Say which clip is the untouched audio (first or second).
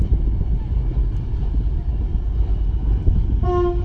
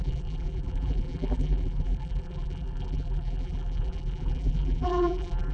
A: first